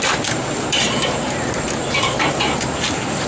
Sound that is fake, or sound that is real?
fake